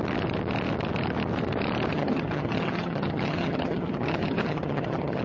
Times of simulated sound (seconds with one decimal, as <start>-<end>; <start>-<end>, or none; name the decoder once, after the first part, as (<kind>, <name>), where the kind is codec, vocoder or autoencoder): 1.9-5.2 (vocoder, HiFi-GAN)

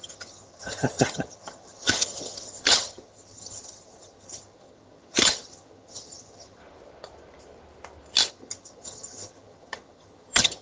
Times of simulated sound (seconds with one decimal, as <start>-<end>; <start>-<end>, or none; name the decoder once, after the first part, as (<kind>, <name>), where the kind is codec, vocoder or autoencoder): 0.0-6.6 (vocoder, HiFi-GAN); 8.3-10.6

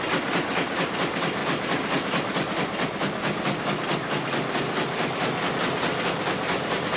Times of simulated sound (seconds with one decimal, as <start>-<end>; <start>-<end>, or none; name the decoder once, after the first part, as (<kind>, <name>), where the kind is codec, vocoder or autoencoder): none